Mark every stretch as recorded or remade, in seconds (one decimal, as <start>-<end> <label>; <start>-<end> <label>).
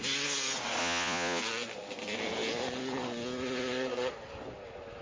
0.0-0.8 recorded; 0.8-1.4 remade; 1.4-5.0 recorded